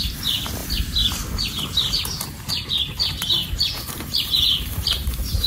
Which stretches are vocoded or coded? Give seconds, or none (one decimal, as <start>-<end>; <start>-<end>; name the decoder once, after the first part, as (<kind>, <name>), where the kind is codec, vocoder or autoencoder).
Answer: none